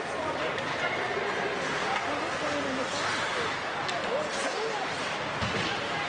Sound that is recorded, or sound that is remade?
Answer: recorded